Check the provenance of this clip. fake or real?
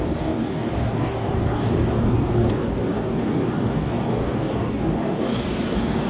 fake